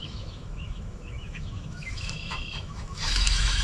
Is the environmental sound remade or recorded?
remade